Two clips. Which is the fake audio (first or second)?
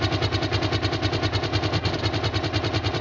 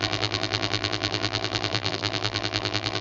second